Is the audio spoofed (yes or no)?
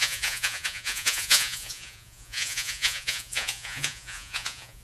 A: yes